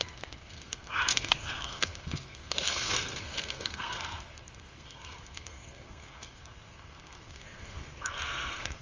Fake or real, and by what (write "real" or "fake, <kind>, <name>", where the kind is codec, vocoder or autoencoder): fake, codec, SNAC